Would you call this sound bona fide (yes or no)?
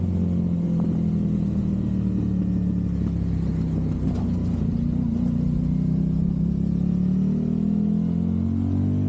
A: yes